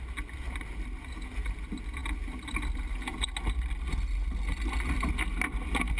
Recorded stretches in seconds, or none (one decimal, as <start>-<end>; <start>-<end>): 0.0-6.0